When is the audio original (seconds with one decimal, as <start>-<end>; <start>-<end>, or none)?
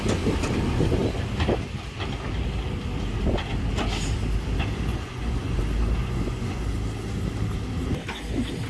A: 0.0-4.9; 5.6-6.0; 6.6-8.7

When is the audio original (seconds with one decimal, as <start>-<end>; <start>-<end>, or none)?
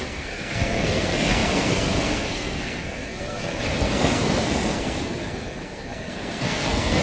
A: none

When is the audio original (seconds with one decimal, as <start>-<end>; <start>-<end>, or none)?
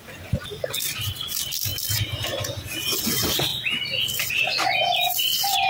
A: 0.0-5.7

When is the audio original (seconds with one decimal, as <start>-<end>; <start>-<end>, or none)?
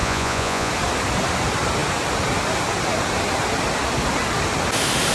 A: 0.7-5.1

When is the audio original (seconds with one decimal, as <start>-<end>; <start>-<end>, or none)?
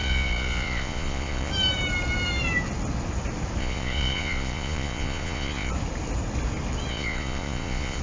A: 1.5-3.6; 5.7-6.9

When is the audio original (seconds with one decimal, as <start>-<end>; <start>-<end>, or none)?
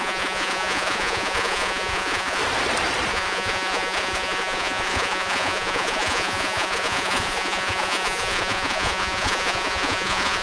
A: 2.4-3.1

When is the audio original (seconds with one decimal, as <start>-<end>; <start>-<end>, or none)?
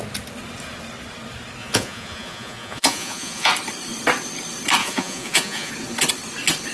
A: 0.0-1.6; 3.5-4.8; 5.7-6.7